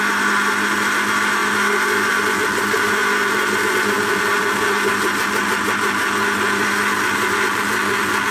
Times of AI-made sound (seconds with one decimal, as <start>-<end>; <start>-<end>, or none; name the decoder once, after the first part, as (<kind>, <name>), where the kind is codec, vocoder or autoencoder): none